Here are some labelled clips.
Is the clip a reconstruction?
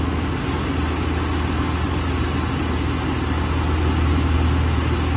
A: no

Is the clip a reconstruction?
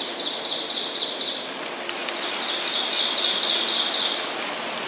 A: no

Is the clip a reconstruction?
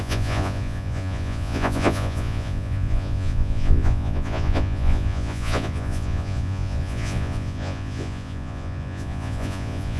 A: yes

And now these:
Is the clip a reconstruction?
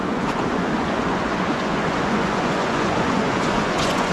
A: yes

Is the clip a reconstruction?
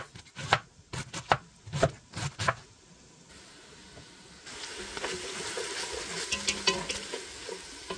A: no